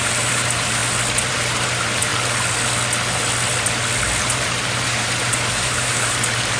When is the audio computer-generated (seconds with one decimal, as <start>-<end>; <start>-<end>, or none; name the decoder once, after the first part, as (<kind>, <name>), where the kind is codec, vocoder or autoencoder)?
0.0-0.8 (vocoder, BigVGAN v2); 1.3-2.1; 4.2-6.6